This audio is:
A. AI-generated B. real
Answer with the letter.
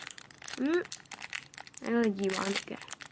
A